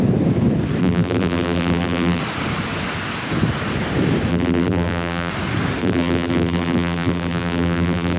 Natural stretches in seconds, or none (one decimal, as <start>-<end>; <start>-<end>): 0.0-0.8; 2.2-4.3; 5.3-5.8